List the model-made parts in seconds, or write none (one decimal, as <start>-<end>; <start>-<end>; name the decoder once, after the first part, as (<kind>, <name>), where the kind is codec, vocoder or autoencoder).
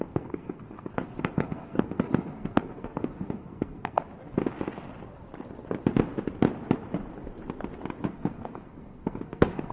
0.0-4.1 (codec, SNAC); 8.1-9.7